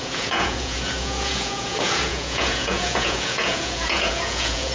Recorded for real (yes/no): no